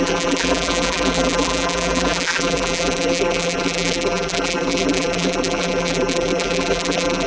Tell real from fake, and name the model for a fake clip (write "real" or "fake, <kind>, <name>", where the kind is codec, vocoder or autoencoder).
fake, vocoder, BigVGAN v2